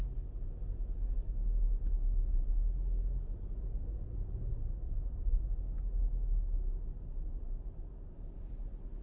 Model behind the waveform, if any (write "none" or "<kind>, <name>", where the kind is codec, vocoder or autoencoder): none